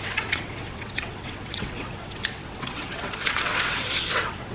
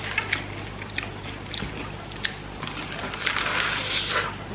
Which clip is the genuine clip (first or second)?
second